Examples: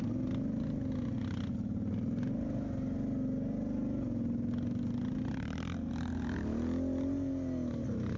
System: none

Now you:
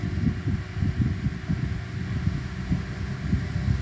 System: none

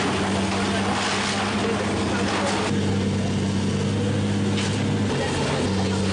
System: none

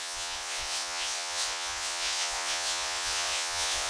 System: vocoder, Vocos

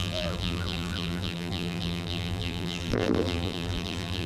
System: vocoder, BigVGAN v2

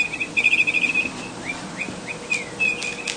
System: none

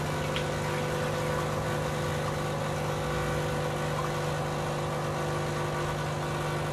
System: none